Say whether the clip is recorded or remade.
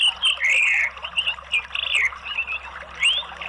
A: recorded